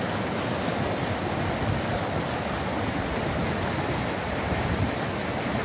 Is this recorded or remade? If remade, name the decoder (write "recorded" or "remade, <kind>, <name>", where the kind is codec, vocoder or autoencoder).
recorded